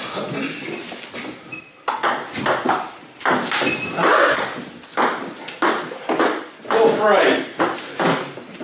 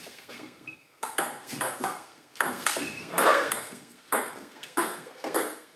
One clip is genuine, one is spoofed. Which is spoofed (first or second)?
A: second